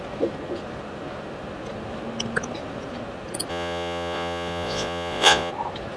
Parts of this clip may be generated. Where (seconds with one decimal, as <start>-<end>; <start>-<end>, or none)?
3.5-5.5